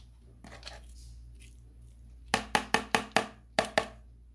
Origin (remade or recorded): recorded